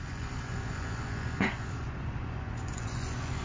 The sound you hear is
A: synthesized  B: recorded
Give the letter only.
A